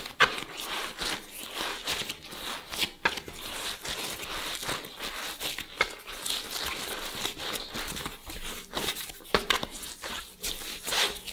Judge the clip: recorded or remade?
recorded